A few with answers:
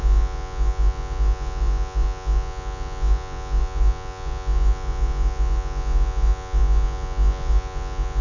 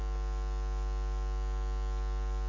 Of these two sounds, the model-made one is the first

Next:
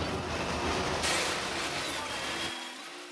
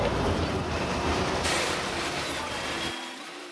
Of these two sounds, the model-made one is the second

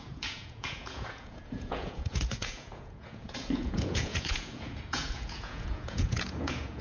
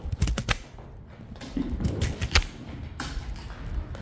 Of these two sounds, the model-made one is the first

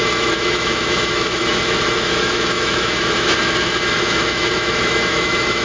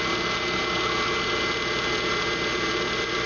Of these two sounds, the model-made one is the first